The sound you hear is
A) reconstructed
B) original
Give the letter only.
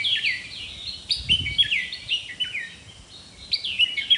B